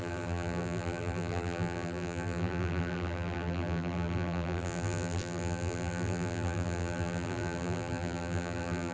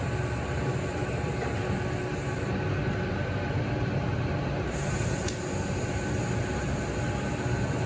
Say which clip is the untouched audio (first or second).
second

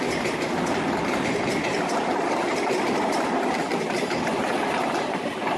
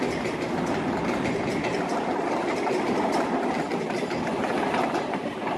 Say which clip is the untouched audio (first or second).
second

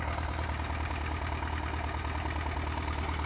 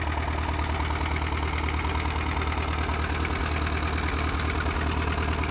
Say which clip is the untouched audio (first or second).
second